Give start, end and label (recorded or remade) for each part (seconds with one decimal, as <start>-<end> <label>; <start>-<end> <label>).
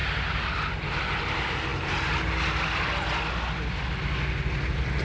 0.0-5.0 recorded